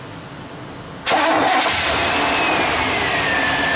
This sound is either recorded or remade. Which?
recorded